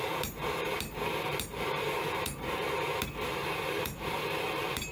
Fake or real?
fake